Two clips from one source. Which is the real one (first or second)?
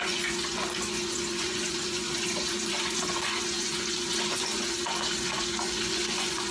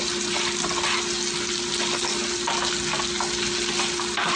second